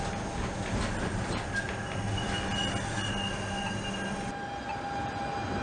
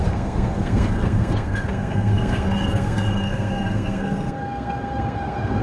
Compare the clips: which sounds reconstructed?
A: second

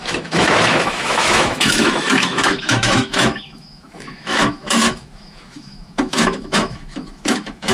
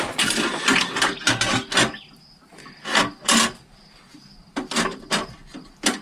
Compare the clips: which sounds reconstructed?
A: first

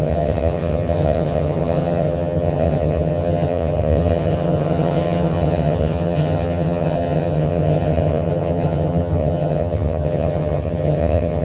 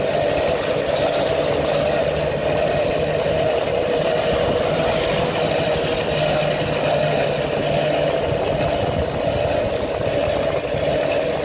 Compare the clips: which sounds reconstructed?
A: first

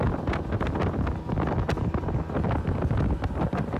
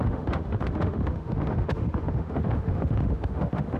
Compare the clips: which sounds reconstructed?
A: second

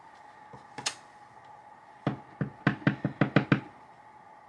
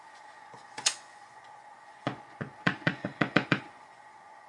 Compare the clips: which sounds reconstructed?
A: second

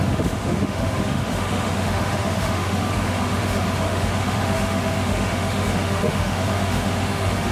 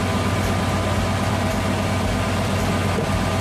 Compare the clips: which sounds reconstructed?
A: first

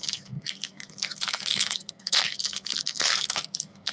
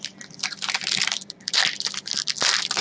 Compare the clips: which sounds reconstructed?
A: first